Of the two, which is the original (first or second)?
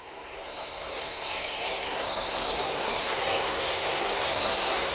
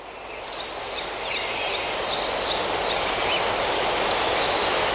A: second